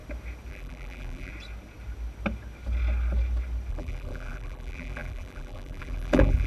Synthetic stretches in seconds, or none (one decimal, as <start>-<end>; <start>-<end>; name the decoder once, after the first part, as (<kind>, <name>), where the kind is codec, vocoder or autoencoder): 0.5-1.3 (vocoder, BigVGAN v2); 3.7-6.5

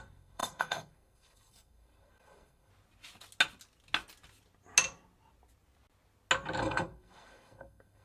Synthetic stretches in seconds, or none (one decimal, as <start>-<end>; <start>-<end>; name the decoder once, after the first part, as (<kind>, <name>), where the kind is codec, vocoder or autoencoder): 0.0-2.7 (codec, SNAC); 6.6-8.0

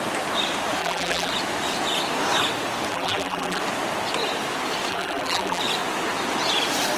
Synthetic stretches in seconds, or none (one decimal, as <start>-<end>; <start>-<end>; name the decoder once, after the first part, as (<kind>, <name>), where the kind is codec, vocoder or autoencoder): 0.8-1.3 (vocoder, BigVGAN v2); 2.9-3.6; 4.9-5.6

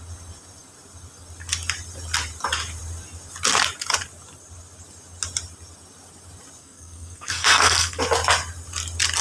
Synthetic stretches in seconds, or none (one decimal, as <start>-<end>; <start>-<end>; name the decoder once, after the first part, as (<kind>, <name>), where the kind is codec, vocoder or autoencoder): 6.6-8.0 (codec, SNAC)